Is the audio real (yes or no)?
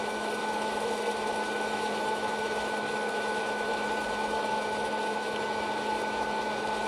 no